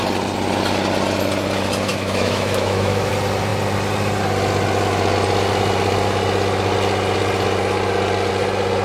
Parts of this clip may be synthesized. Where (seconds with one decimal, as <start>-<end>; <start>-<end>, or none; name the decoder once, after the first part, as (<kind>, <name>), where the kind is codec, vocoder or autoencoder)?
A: 1.9-3.1 (autoencoder, DAC-VAE)

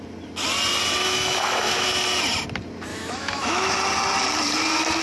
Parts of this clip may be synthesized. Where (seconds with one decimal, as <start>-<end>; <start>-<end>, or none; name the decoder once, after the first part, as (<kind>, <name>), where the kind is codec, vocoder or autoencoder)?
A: 1.0-1.9 (autoencoder, DAC-VAE); 2.9-3.7